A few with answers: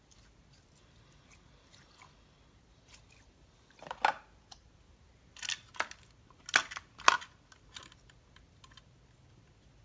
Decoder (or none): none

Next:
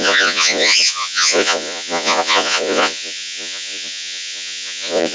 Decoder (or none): vocoder, Vocos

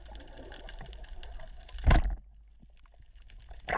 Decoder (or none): none